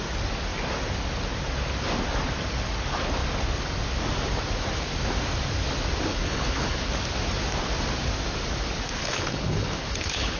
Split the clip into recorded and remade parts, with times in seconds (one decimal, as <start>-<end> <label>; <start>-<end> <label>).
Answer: 0.0-6.1 recorded; 6.1-6.9 remade; 6.9-9.0 recorded; 9.0-10.4 remade